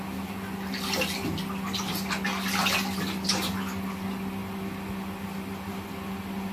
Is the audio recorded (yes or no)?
yes